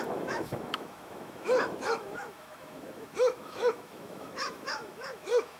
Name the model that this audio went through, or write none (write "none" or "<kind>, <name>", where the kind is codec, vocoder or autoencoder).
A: autoencoder, DAC-VAE